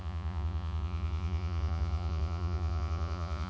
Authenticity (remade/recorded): remade